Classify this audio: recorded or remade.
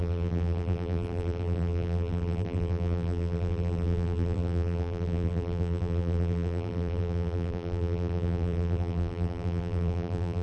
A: remade